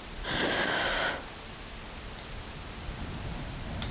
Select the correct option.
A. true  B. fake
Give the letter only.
A